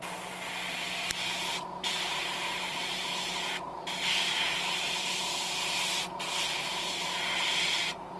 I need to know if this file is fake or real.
real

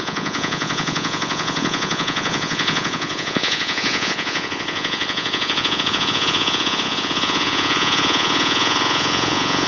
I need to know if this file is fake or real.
fake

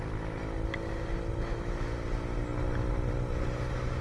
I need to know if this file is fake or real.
real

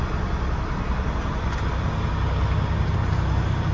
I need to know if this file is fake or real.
real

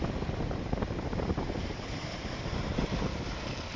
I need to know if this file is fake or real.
real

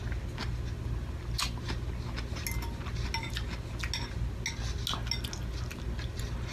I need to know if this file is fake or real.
real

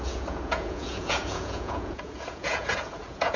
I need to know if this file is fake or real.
fake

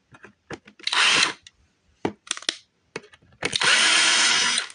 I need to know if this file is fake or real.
real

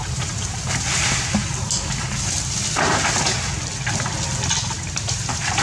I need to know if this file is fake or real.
real